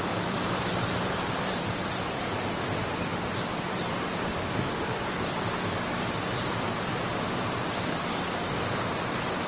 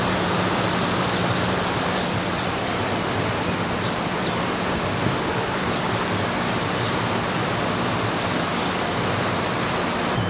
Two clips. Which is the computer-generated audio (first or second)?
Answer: first